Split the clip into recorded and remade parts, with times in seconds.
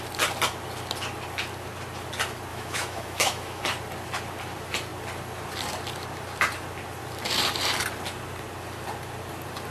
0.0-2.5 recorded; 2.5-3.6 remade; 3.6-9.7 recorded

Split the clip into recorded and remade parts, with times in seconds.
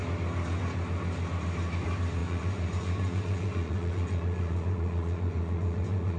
0.0-2.2 recorded; 2.2-6.2 remade